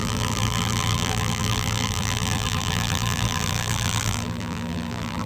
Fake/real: fake